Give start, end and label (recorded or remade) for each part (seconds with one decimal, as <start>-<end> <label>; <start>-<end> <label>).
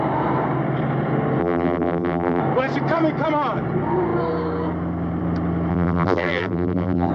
0.0-1.4 recorded; 1.4-2.4 remade; 2.4-5.7 recorded; 5.7-7.1 remade